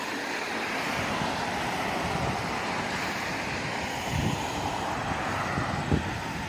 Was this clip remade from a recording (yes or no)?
no